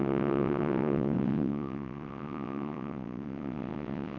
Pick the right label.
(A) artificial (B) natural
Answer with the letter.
A